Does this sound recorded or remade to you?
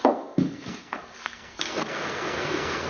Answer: remade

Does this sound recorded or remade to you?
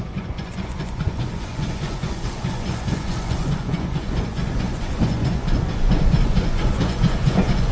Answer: remade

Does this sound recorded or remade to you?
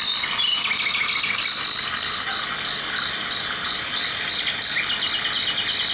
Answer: recorded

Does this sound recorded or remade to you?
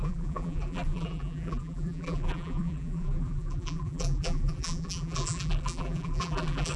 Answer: remade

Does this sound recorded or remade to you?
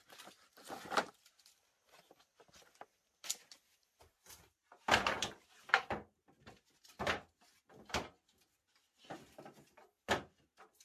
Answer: recorded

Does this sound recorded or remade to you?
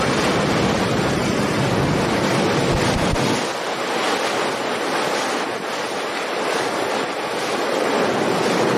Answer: recorded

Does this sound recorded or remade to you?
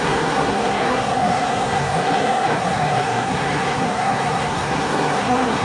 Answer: remade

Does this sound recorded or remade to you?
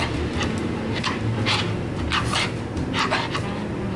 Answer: recorded